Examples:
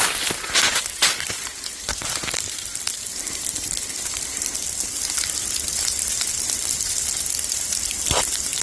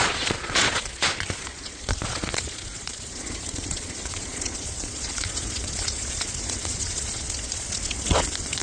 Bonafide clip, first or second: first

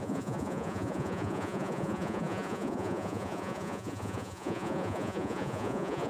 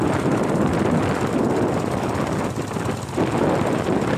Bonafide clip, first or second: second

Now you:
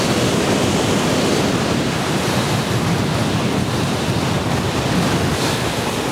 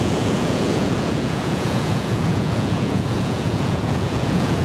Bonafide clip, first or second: first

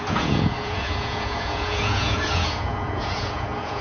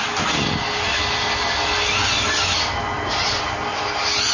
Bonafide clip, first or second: second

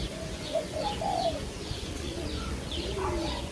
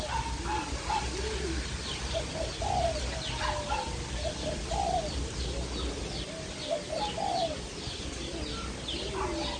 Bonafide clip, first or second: second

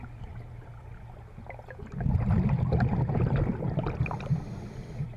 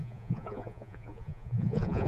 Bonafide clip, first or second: first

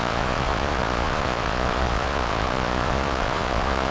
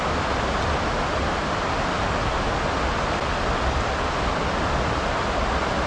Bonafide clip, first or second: second